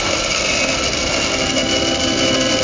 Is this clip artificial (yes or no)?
no